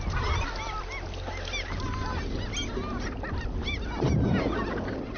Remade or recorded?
recorded